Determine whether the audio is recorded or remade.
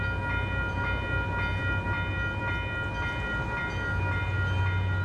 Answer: recorded